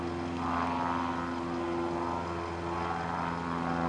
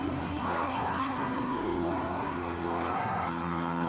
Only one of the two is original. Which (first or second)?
first